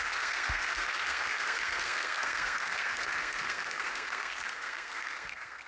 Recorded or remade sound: remade